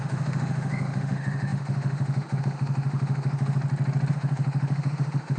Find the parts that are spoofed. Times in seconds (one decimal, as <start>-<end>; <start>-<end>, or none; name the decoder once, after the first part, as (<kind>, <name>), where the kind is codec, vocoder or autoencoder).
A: 0.0-3.6 (autoencoder, DAC-VAE); 4.1-5.4